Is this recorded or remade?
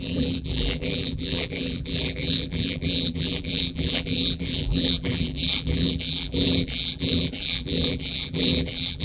remade